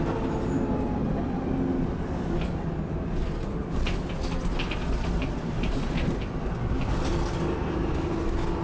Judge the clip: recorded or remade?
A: recorded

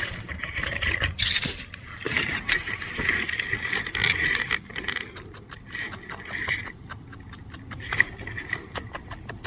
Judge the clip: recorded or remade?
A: recorded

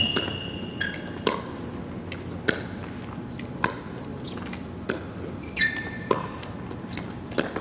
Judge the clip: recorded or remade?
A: recorded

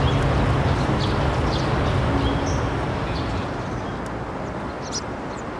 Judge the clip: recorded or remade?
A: recorded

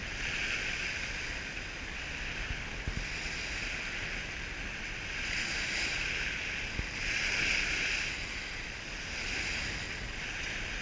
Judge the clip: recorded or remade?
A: recorded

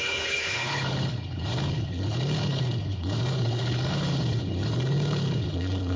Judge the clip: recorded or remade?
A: remade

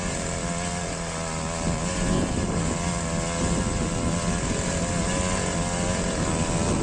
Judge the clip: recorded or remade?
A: recorded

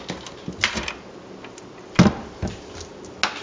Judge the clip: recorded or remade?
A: recorded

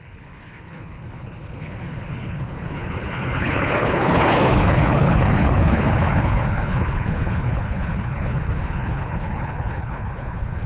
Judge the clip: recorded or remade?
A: remade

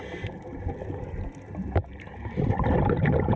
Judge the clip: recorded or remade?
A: recorded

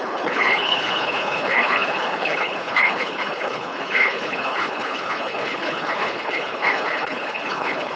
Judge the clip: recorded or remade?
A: remade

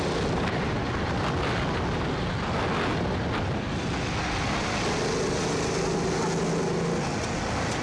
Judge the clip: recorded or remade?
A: recorded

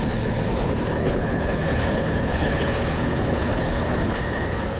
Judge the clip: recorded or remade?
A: remade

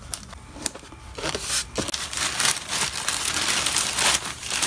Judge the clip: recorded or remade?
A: recorded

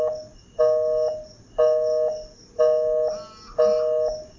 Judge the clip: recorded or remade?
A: recorded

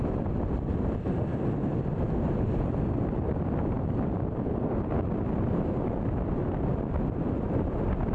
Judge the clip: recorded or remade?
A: recorded